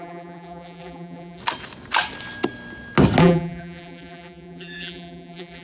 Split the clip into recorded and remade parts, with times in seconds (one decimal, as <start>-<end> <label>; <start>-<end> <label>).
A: 0.0-1.4 remade; 1.4-3.2 recorded; 3.2-5.6 remade